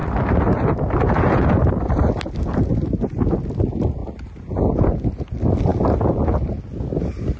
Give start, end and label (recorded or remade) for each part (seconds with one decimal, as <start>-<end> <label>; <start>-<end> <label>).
0.0-7.4 recorded